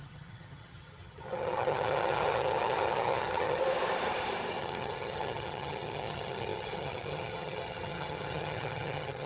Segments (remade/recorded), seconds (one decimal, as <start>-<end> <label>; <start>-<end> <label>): 0.0-3.6 remade; 3.6-4.6 recorded; 4.6-9.3 remade